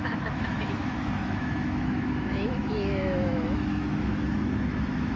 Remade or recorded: remade